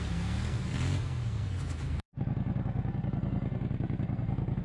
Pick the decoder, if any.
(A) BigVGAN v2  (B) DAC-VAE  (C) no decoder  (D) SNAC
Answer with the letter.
D